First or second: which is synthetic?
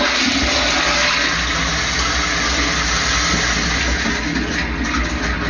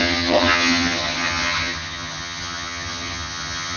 second